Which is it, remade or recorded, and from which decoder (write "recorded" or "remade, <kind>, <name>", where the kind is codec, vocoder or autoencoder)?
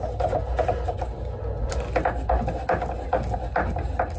recorded